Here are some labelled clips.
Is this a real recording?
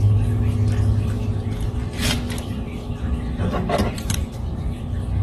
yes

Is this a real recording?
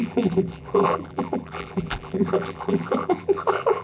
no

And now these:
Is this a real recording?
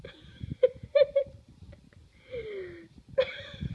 no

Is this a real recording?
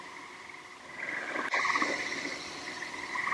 yes